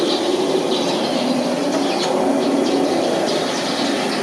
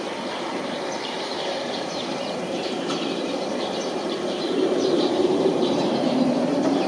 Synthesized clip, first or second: second